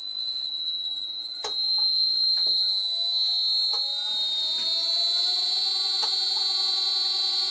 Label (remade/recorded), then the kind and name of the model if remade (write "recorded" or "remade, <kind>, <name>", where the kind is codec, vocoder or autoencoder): recorded